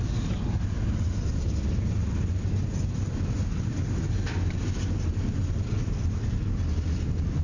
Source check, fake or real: real